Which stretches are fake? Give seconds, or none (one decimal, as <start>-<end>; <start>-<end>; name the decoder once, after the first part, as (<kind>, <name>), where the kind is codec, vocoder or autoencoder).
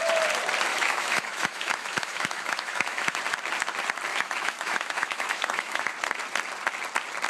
0.7-3.2 (autoencoder, DAC-VAE); 4.1-5.9